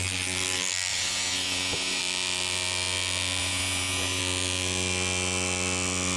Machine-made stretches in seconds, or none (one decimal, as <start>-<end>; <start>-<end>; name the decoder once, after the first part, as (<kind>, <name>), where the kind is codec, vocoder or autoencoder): 0.9-2.0 (vocoder, Vocos); 3.4-4.2